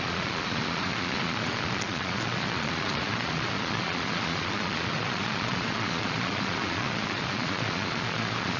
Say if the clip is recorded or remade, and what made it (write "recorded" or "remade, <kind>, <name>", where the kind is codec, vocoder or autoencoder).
remade, vocoder, Vocos